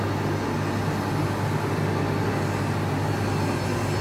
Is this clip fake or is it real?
real